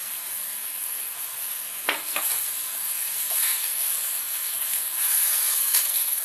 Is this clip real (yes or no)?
no